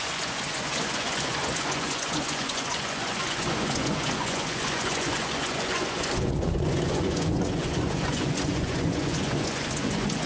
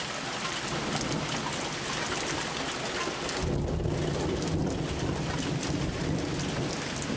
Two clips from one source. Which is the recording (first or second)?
second